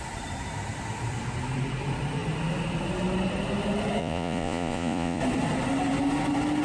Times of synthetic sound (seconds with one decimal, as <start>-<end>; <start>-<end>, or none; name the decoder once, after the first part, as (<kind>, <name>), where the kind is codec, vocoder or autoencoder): 4.0-5.2 (vocoder, Vocos)